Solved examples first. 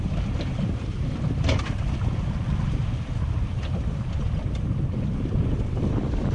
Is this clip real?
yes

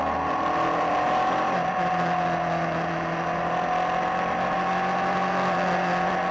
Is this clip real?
yes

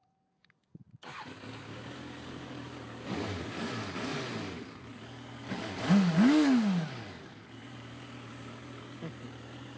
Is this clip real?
no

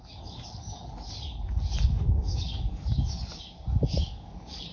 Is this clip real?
no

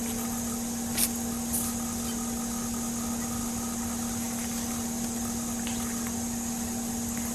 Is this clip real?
yes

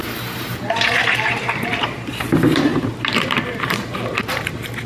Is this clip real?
no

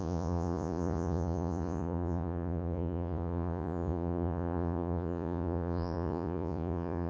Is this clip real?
no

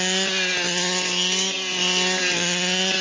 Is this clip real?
yes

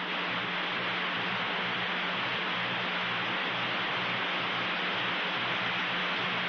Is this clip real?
yes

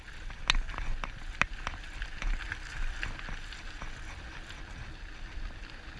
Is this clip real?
yes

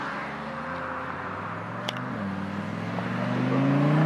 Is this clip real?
yes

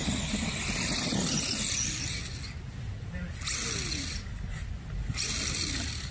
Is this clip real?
yes